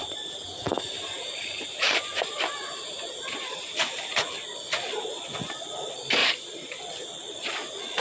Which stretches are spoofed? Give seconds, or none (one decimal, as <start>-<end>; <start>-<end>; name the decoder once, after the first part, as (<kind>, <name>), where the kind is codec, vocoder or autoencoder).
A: 0.0-3.8 (vocoder, BigVGAN v2); 6.2-6.8